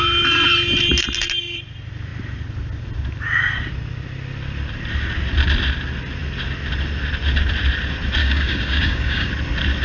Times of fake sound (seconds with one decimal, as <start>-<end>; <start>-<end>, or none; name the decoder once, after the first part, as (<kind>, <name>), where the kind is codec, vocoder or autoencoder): 8.2-9.3 (codec, DAC)